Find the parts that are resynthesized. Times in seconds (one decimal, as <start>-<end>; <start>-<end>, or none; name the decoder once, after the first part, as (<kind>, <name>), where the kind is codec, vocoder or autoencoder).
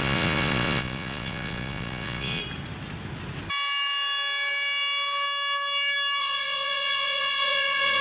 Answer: 0.0-2.4 (vocoder, Vocos); 6.2-8.0